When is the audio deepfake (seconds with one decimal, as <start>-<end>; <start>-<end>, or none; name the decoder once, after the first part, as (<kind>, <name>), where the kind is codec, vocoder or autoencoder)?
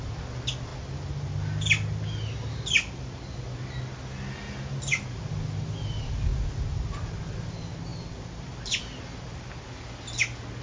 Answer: none